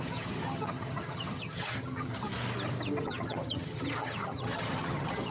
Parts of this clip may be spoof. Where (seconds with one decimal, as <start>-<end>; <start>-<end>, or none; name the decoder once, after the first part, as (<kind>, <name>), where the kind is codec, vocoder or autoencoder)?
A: 0.0-2.3 (vocoder, HiFi-GAN); 3.0-5.3